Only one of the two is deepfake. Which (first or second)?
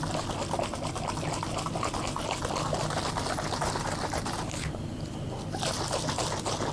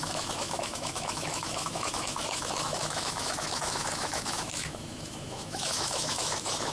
second